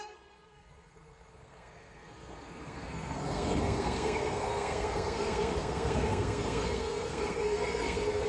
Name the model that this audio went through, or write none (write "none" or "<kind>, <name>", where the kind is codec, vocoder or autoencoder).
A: codec, SNAC